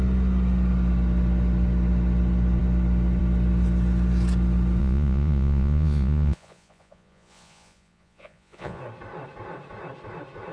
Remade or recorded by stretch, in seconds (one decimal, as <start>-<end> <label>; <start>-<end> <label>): 0.0-4.8 recorded; 4.8-8.8 remade; 8.8-10.5 recorded